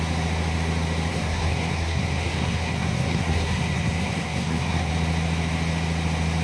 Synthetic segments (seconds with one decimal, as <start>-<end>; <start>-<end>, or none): 1.1-4.9